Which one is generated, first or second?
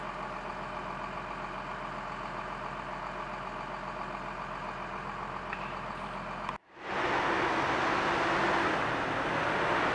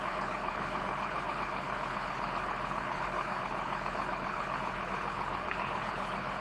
second